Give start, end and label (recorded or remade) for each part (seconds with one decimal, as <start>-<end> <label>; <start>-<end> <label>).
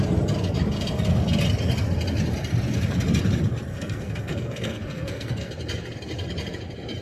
0.0-3.7 recorded; 3.7-5.5 remade; 5.5-7.0 recorded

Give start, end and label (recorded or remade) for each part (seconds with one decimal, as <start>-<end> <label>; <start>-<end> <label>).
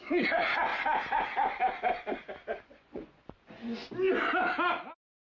0.0-0.7 remade; 0.7-2.6 recorded; 2.6-3.8 remade; 3.8-5.3 recorded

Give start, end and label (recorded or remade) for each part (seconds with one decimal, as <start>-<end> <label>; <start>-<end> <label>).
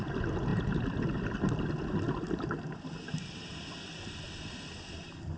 0.0-5.4 recorded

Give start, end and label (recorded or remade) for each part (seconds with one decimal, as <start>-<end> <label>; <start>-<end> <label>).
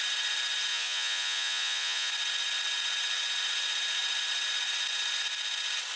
0.0-0.7 recorded; 0.7-2.1 remade; 2.1-6.0 recorded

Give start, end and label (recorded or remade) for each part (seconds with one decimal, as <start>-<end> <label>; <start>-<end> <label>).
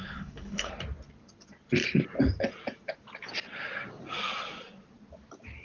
0.0-0.7 remade; 0.7-5.6 recorded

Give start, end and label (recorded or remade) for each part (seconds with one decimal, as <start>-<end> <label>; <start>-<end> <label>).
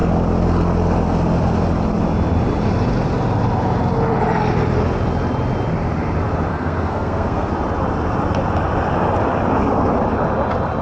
0.0-6.5 recorded; 6.5-7.5 remade; 7.5-10.8 recorded